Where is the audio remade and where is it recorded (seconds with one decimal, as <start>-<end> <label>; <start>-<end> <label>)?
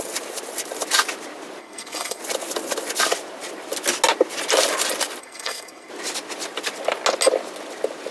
0.0-1.6 recorded; 1.6-2.2 remade; 2.2-5.2 recorded; 5.2-5.9 remade; 5.9-8.1 recorded